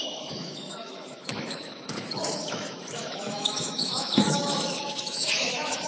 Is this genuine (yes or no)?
no